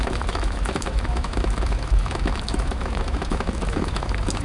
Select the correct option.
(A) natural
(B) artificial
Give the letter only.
B